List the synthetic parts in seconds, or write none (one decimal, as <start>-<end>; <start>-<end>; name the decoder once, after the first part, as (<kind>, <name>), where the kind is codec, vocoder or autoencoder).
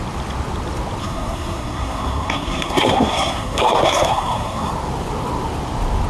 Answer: 1.0-4.7 (codec, SNAC)